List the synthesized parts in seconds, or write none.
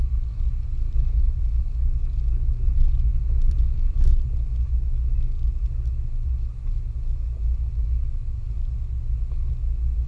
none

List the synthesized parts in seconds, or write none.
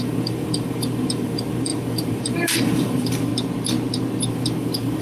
0.0-3.3 (vocoder, BigVGAN v2); 4.3-5.0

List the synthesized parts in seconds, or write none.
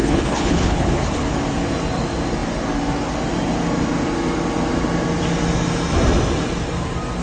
0.0-1.3 (codec, HILCodec)